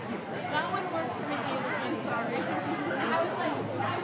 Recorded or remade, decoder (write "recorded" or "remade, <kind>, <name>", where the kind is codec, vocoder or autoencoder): recorded